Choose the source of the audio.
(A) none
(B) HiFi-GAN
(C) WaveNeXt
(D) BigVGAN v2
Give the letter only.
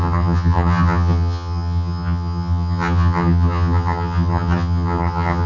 B